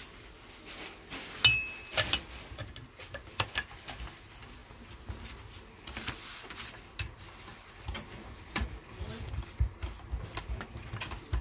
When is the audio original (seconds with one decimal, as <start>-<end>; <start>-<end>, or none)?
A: 0.0-11.4